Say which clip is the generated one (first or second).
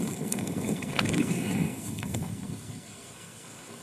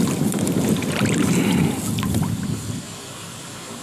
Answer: first